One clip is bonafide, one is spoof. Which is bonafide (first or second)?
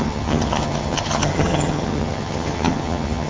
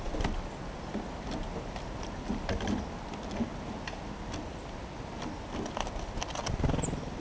second